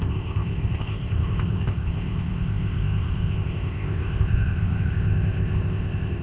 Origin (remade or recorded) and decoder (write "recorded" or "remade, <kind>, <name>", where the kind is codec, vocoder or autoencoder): remade, codec, ZipCodec